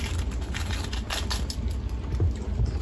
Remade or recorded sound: recorded